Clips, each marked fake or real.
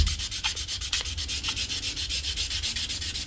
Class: real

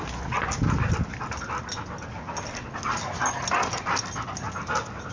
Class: real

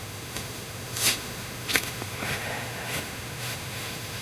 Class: fake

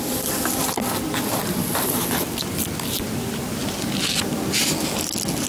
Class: real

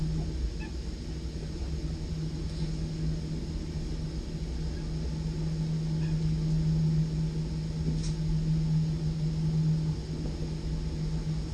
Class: real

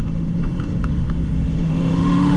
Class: fake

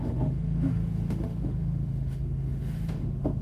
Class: fake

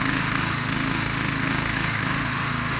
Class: fake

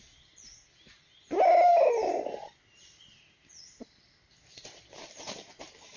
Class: real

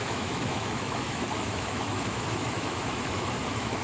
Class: fake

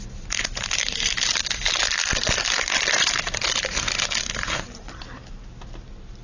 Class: real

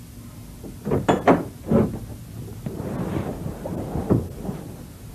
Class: real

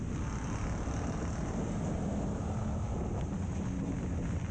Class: real